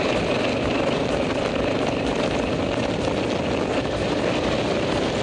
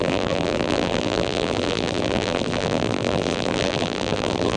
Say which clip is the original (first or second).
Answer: first